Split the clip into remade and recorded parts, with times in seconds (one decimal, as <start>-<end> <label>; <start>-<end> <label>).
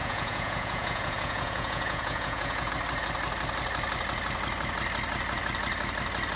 0.0-2.7 remade; 2.7-6.4 recorded